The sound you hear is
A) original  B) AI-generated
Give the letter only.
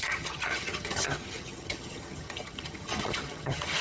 B